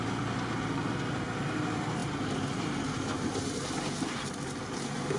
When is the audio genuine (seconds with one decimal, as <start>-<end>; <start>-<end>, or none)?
0.0-5.2